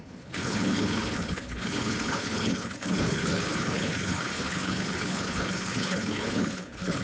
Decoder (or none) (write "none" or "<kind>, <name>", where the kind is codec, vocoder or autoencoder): codec, HILCodec